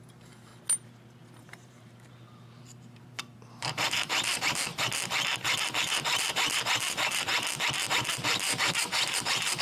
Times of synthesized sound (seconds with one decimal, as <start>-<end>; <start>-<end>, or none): 0.0-0.5; 1.4-4.7; 5.8-7.3; 7.9-9.6